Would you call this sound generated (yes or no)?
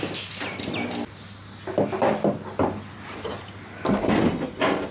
no